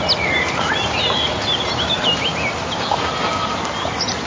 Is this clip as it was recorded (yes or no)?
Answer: yes